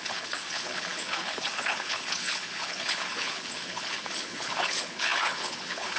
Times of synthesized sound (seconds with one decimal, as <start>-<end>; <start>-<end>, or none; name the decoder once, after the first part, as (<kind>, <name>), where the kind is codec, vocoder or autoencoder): 0.0-6.0 (codec, HILCodec)

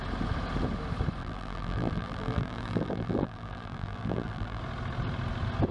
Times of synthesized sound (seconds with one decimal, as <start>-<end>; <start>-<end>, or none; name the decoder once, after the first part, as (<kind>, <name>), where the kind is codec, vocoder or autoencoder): 1.2-4.6 (vocoder, BigVGAN v2)

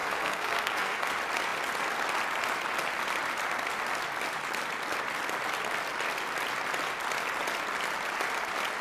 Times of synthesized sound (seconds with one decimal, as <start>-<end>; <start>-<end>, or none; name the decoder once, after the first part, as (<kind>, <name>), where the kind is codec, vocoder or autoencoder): 0.0-1.1 (codec, SNAC)

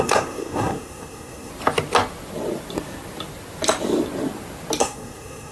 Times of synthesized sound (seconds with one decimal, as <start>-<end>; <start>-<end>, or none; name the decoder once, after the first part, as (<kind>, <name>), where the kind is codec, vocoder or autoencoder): 0.0-1.5 (codec, SNAC); 4.8-5.5

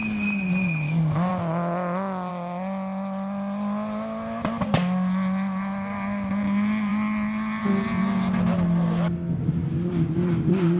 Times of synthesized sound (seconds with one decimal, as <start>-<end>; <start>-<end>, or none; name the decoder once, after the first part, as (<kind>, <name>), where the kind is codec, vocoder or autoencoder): none

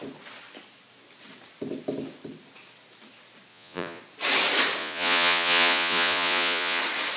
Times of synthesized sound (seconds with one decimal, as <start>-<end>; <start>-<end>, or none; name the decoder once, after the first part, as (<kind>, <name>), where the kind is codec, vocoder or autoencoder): 3.5-4.0 (vocoder, Vocos); 4.8-6.8

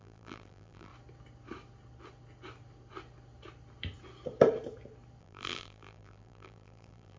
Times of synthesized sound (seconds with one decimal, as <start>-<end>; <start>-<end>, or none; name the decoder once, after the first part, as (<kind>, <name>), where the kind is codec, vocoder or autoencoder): 0.0-0.9 (vocoder, BigVGAN v2); 5.2-7.2